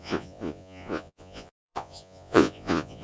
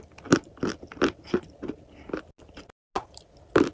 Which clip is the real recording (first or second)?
second